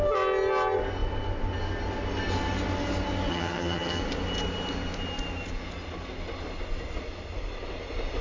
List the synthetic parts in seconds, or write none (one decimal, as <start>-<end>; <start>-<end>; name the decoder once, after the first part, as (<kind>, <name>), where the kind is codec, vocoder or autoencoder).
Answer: 3.3-4.0 (vocoder, HiFi-GAN)